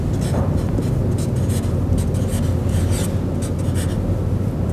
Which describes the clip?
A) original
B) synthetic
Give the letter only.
A